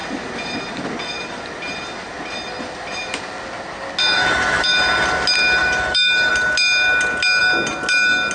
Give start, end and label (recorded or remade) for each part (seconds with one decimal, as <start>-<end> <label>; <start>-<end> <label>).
0.0-4.0 recorded; 4.0-4.8 remade; 4.8-5.6 recorded; 5.6-6.3 remade; 6.3-8.3 recorded